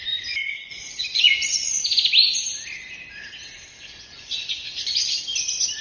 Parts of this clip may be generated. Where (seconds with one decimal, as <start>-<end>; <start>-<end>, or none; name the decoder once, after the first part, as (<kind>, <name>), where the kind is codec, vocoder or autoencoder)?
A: 0.6-1.8 (vocoder, Vocos); 3.7-5.2